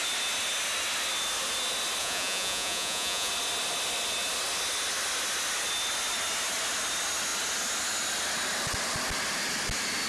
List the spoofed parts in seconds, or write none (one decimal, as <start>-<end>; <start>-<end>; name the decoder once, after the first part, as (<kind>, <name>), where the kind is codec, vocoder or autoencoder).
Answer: 2.0-3.3 (vocoder, Vocos)